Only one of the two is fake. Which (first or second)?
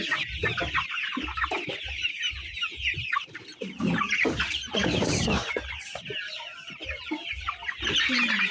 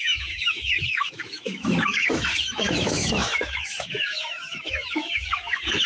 second